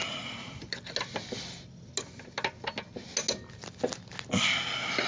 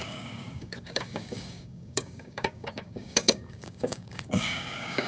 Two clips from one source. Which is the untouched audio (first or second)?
first